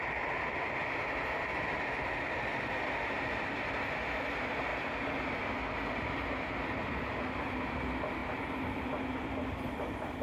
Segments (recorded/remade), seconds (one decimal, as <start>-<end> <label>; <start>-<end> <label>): 0.0-8.2 recorded; 8.2-10.2 remade